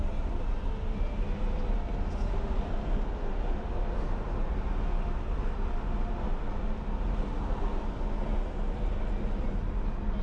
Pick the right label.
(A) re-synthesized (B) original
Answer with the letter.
B